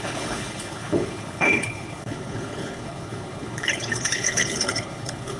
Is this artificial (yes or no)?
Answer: yes